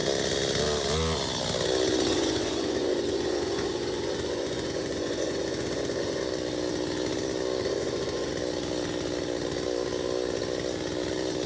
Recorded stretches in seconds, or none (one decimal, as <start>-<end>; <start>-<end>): 0.0-2.1; 6.2-7.6; 8.3-11.5